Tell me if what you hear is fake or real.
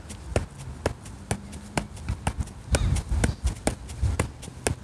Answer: real